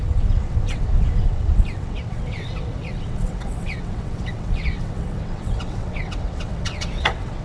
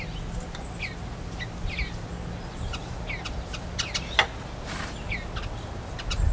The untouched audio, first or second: second